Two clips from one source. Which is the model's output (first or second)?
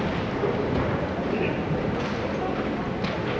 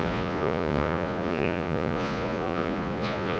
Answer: second